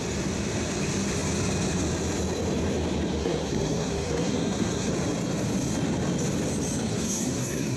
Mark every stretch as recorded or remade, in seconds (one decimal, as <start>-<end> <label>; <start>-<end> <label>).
0.0-3.2 recorded; 3.2-4.9 remade; 4.9-6.9 recorded; 6.9-7.8 remade